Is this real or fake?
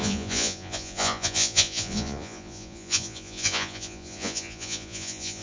fake